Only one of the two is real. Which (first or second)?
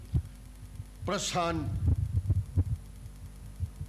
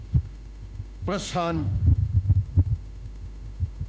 first